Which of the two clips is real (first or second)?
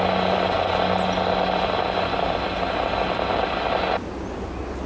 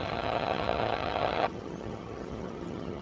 first